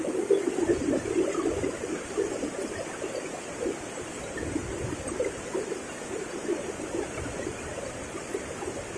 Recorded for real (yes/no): yes